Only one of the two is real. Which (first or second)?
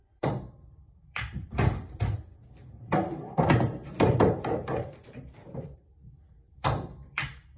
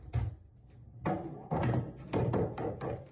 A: second